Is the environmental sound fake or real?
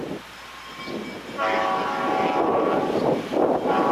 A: real